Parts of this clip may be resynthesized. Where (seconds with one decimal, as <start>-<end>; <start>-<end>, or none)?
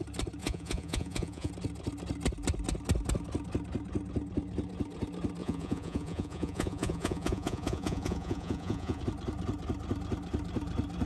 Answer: 0.4-1.5; 5.4-9.0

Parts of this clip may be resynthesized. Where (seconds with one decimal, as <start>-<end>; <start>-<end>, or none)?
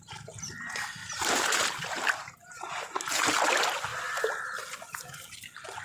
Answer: 1.0-3.5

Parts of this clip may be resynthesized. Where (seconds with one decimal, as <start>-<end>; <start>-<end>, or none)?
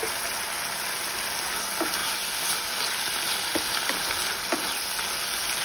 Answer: none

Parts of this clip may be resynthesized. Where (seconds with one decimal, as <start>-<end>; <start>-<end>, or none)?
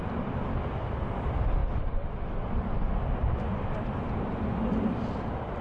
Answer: none